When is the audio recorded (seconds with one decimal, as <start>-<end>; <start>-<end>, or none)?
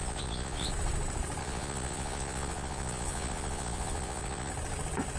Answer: 0.7-1.4; 4.5-5.2